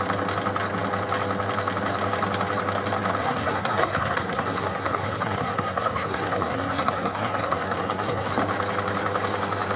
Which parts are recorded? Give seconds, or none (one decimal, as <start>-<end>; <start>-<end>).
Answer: 0.0-3.2; 8.3-9.8